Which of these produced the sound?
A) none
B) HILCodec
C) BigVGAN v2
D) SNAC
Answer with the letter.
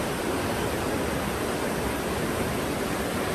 A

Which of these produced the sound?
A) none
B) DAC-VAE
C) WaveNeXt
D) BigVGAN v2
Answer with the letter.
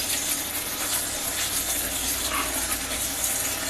A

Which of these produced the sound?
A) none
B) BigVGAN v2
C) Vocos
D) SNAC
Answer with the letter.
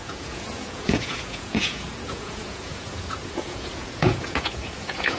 C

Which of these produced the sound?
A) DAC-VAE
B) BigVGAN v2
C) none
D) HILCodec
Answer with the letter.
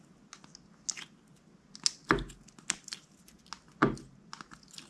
C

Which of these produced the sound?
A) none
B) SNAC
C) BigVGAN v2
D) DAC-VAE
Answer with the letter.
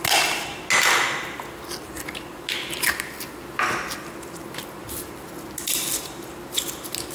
A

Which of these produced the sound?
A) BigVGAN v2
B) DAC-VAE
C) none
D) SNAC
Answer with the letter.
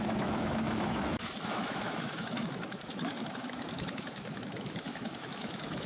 B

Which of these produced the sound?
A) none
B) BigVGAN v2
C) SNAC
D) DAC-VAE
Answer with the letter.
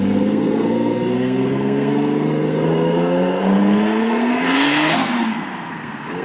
C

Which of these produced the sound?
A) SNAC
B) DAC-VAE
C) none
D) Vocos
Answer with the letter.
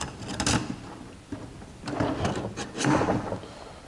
C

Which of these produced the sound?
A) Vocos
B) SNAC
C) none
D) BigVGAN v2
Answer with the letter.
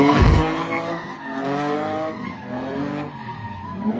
B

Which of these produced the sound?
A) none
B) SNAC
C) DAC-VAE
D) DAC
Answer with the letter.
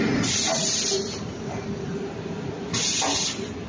A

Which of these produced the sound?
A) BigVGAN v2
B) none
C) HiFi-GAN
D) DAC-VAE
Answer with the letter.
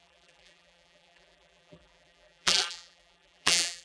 A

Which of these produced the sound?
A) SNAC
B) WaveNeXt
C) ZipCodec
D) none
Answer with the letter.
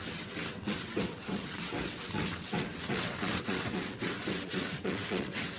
B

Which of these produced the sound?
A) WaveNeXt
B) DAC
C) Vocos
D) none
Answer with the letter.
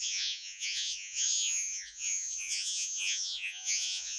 C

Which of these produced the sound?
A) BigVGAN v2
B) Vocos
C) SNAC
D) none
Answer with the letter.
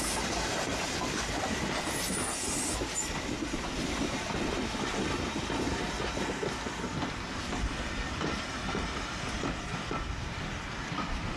D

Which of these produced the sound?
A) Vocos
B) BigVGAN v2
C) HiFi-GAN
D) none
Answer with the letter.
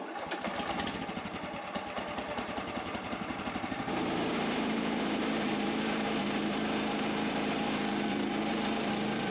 B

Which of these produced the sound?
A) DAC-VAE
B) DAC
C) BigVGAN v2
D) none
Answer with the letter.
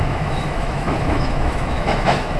A